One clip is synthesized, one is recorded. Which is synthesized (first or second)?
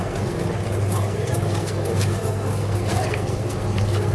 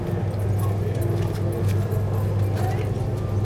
first